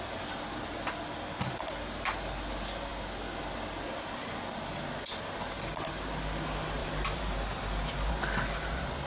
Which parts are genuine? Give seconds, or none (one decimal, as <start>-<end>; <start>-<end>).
0.0-6.8; 8.1-9.1